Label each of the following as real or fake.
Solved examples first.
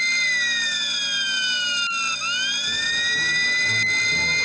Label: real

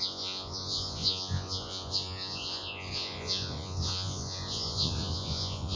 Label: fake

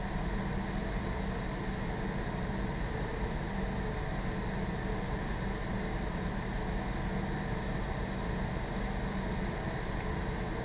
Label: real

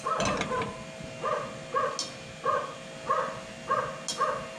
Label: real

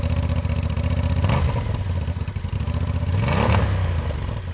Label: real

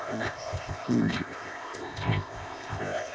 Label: fake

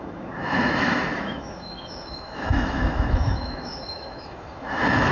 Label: fake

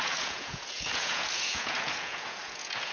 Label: fake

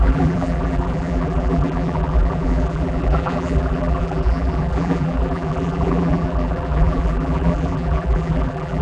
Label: fake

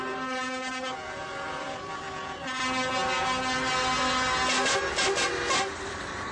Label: real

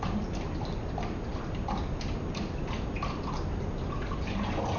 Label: real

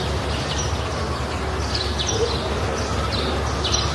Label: real